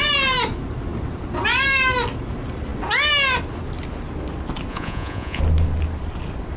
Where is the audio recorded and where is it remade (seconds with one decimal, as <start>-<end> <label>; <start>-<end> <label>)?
0.0-4.7 recorded; 4.7-5.4 remade; 5.4-6.6 recorded